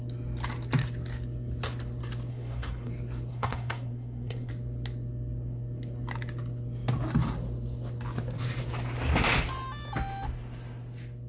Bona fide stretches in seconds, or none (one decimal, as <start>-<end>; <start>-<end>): 0.0-2.3; 2.9-3.3; 4.5-11.3